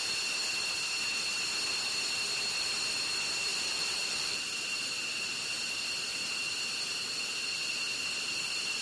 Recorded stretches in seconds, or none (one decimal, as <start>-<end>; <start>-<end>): 0.0-3.5; 4.9-8.8